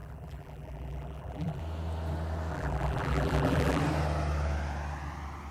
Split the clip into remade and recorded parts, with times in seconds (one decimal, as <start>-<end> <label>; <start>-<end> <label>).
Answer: 0.0-1.6 remade; 1.6-2.5 recorded; 2.5-3.8 remade; 3.8-5.5 recorded